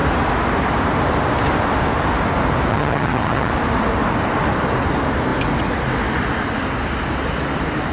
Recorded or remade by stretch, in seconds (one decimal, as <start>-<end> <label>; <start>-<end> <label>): 0.0-2.7 recorded; 2.7-3.5 remade; 3.5-7.9 recorded